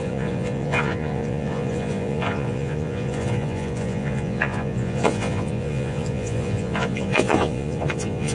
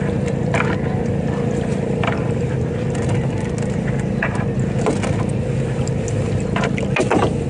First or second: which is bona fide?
second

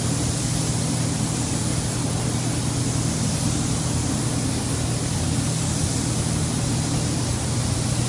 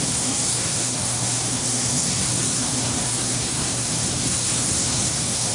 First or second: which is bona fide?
first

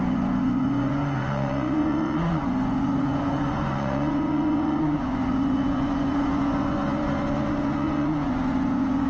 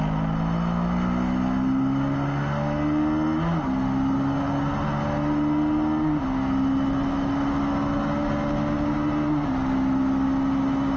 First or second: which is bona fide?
second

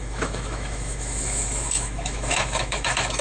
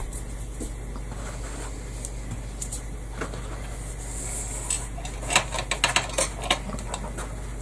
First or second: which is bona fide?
second